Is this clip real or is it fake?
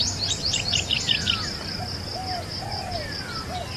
real